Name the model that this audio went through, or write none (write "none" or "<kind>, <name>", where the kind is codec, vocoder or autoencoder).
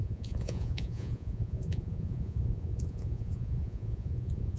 vocoder, Vocos